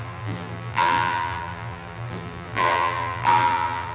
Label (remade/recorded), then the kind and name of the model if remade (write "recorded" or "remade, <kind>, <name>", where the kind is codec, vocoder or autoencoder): remade, vocoder, BigVGAN v2